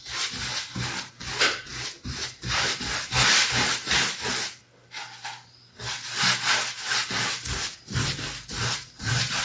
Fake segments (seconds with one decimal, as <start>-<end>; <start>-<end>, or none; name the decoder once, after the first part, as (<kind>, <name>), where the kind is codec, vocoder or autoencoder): 1.7-2.7 (vocoder, BigVGAN v2); 8.5-9.4